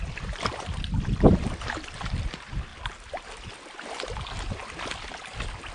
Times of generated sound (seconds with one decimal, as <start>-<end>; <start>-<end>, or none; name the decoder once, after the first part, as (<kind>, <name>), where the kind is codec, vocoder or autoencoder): 0.0-2.7 (vocoder, BigVGAN v2); 3.5-4.6; 5.2-5.7